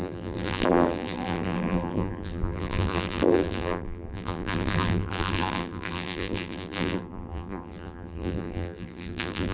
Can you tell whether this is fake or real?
fake